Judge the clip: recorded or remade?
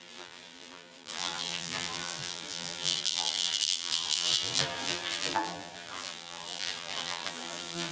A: remade